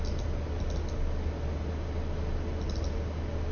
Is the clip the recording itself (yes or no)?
yes